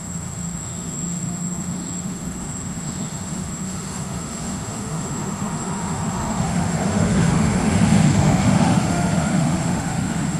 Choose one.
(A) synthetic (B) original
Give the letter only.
A